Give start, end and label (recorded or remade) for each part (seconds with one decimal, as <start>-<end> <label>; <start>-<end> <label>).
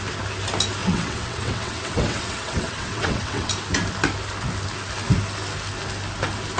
0.0-0.8 recorded; 0.8-3.5 remade; 3.5-6.6 recorded